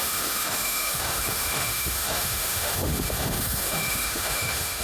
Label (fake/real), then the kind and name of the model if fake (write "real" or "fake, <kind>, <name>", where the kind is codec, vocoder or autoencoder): fake, autoencoder, DAC-VAE